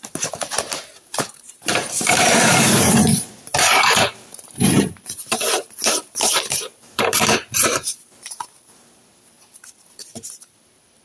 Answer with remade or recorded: remade